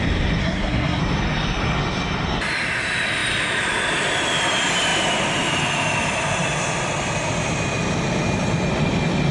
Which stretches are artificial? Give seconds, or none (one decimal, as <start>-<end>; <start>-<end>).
0.4-1.0